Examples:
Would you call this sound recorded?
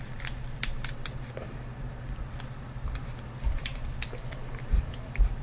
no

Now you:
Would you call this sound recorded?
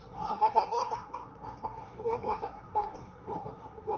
no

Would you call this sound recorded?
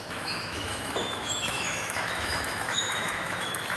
no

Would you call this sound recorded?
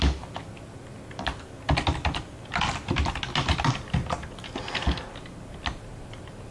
yes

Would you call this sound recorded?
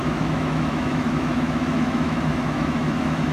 no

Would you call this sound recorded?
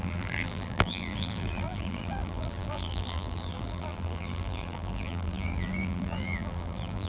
no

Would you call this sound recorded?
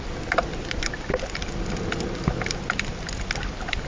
yes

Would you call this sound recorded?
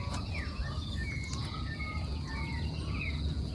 no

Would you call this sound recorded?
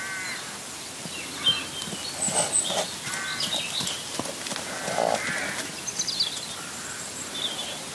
yes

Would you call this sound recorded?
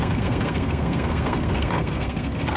no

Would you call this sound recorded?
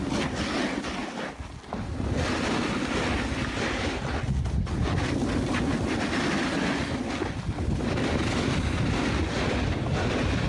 yes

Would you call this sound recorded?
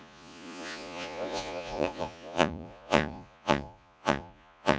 no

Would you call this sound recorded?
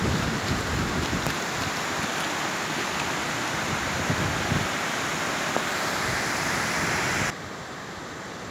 yes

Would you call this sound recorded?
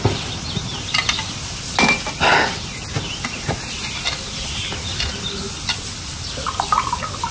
yes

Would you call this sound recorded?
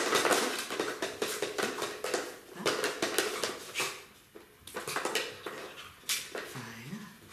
yes